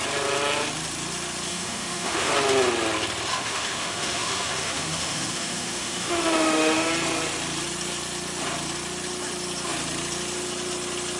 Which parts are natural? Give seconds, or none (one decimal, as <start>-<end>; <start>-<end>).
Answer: 0.0-1.5; 2.3-3.3; 6.9-11.2